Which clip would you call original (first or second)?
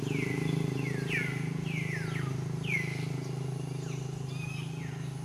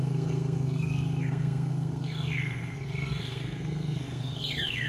first